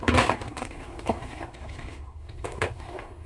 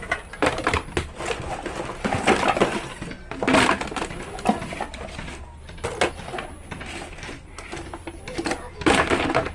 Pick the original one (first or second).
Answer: second